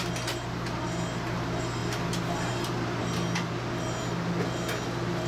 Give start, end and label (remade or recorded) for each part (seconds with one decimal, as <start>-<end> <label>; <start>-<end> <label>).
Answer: 0.0-5.3 recorded